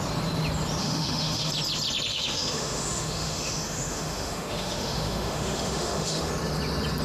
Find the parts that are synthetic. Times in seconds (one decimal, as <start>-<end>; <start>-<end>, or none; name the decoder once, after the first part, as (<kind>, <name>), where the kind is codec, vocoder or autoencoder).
0.8-1.5 (autoencoder, DAC-VAE); 2.1-6.3